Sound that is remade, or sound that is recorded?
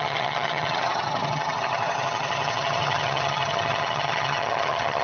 remade